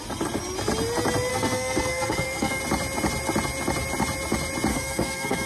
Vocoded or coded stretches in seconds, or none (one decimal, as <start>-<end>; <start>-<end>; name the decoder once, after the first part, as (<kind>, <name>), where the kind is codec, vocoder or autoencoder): 1.3-2.6 (codec, SNAC); 4.7-5.5